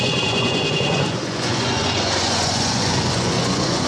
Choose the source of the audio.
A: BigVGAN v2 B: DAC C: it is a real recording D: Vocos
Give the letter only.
D